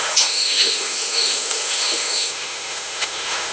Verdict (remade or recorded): remade